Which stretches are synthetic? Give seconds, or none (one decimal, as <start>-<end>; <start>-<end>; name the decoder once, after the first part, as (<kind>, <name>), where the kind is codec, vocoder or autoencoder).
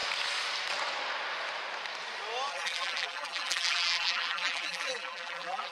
2.5-5.7 (vocoder, BigVGAN v2)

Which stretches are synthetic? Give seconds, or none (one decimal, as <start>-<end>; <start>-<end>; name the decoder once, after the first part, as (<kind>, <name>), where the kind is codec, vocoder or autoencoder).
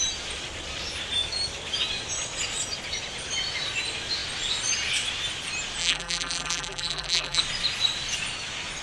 5.8-7.4 (vocoder, BigVGAN v2)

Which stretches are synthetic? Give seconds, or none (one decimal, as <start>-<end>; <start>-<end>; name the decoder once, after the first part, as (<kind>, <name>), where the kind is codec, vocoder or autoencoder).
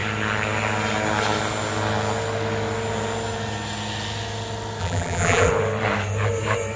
4.8-5.5 (vocoder, BigVGAN v2)